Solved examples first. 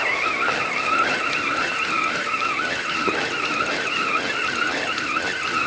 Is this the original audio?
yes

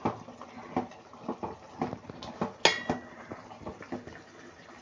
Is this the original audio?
yes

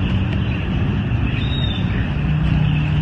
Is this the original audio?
yes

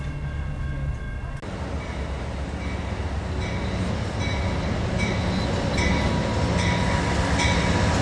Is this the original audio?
yes